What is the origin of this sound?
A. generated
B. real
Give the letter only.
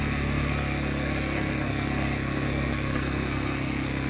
A